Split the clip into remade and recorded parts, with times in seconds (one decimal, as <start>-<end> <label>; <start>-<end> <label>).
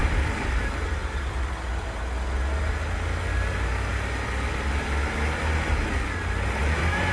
0.0-1.0 recorded; 1.0-2.0 remade; 2.0-7.1 recorded